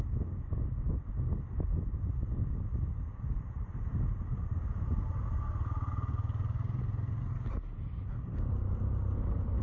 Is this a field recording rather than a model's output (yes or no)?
yes